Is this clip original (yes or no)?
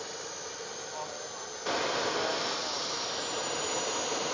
yes